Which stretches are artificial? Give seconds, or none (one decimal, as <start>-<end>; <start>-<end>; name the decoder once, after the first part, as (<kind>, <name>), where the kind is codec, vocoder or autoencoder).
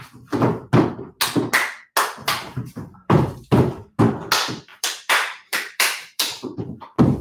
2.2-4.0 (vocoder, BigVGAN v2); 4.7-6.6